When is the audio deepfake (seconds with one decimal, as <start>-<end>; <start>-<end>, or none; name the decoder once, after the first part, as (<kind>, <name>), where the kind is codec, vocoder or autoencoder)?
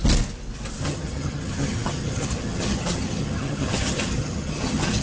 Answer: 0.8-5.0 (vocoder, HiFi-GAN)